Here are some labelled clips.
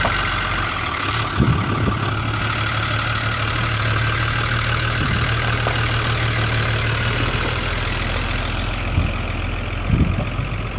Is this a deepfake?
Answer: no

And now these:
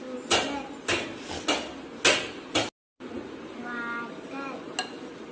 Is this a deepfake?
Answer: no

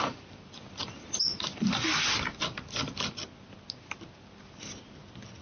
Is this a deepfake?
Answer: no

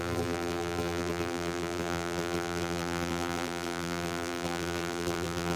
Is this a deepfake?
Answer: yes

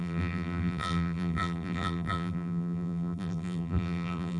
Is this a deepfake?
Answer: yes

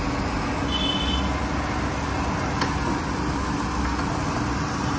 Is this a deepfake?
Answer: no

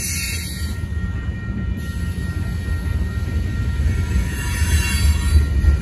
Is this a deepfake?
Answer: no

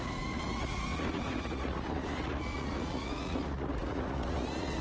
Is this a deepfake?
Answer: yes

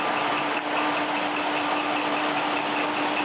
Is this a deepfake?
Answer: no